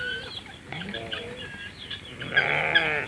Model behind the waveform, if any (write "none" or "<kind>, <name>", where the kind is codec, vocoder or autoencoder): none